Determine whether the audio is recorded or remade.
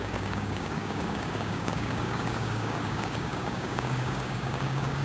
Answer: remade